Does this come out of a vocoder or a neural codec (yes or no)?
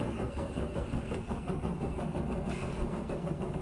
yes